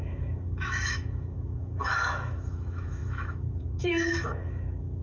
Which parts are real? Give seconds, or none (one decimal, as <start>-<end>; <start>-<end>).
none